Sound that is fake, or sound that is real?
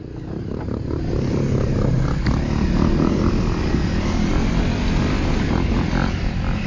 real